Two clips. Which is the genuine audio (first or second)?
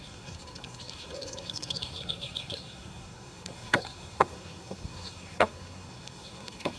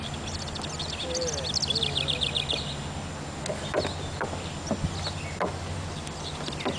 second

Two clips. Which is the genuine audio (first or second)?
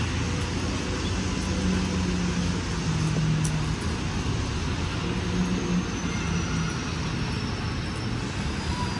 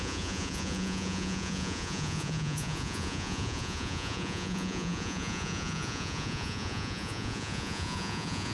first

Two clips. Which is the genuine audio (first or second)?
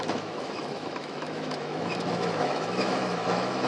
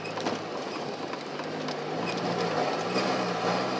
second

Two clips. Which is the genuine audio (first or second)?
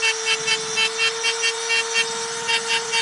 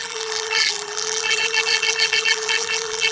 first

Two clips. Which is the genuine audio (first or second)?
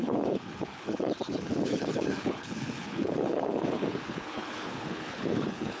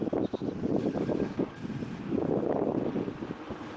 second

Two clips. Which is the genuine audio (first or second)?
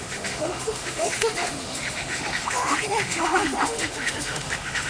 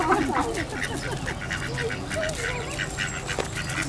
second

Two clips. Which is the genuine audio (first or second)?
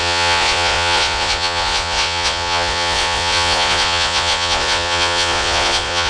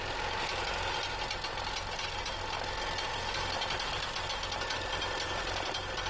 second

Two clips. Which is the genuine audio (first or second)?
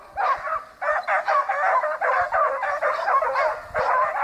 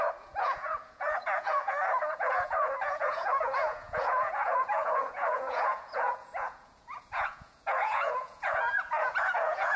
first